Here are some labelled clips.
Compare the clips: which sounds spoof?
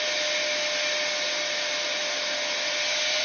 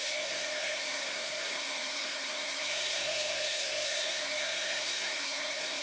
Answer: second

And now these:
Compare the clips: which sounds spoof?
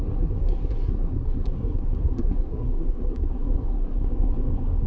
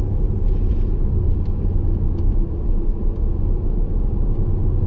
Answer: first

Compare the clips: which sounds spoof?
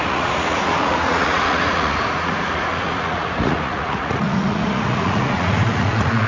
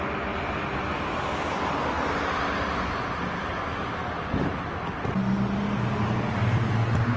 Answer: first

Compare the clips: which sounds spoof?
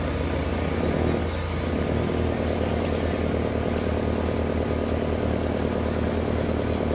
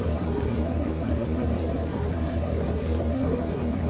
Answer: second